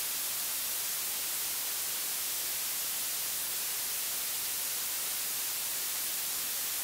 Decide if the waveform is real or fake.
real